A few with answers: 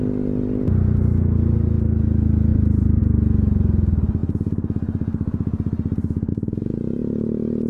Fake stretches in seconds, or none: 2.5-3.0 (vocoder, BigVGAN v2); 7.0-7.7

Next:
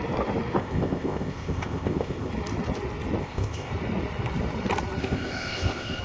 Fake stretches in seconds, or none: 0.6-2.3 (codec, ZipCodec); 3.2-3.7; 5.0-6.0

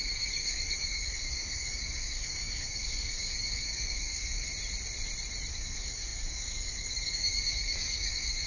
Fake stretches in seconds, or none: 0.0-4.5 (codec, DAC); 5.5-8.5

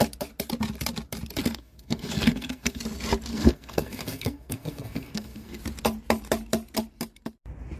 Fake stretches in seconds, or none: 1.4-2.8 (codec, SNAC); 3.3-5.6